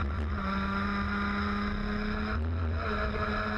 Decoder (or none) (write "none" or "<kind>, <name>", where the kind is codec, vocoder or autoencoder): none